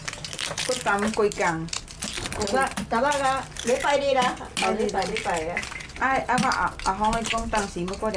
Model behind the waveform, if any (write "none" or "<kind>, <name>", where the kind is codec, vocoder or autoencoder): none